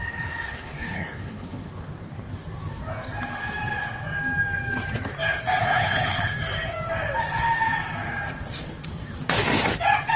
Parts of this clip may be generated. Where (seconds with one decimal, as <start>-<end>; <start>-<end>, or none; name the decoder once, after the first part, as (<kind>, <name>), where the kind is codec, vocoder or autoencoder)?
0.5-1.7 (codec, HILCodec); 5.6-6.3